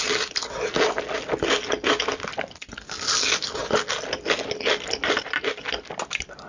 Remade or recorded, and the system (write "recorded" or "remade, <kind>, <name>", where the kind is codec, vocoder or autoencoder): recorded